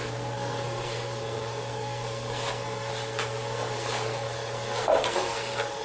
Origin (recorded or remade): remade